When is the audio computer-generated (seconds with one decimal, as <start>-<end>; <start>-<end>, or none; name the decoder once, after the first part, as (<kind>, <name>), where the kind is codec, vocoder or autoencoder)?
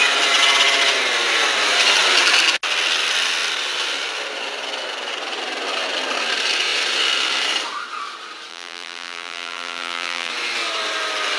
8.5-10.3 (vocoder, BigVGAN v2)